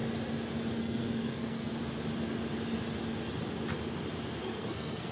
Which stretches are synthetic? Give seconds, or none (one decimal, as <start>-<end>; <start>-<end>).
0.8-1.7; 4.4-5.1